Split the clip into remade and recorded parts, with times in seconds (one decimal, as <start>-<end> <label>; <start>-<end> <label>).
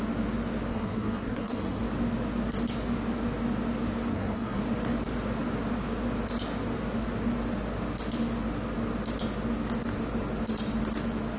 0.0-0.7 recorded; 0.7-1.8 remade; 1.8-4.1 recorded; 4.1-4.6 remade; 4.6-11.4 recorded